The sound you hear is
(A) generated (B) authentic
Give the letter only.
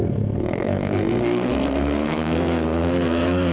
A